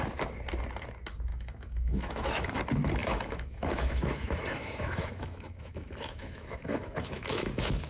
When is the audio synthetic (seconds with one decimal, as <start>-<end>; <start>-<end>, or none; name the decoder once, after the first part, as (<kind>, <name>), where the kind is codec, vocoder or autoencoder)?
1.3-2.6 (autoencoder, DAC-VAE); 3.0-7.9